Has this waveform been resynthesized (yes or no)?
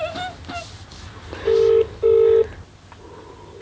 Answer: no